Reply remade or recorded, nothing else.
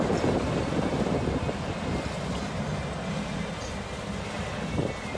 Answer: recorded